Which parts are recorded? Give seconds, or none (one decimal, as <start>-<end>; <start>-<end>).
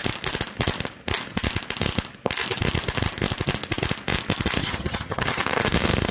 0.0-4.6; 5.4-6.1